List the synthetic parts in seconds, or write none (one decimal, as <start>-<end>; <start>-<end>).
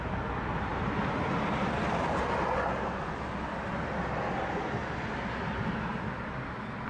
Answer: none